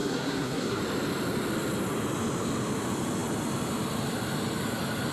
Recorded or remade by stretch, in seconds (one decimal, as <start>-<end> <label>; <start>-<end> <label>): 0.0-0.8 remade; 0.8-5.1 recorded